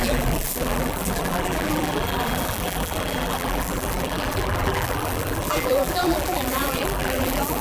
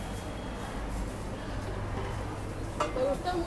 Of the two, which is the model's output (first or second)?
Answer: first